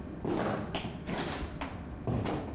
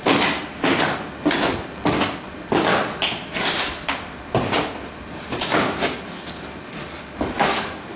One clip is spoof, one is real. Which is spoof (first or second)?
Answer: first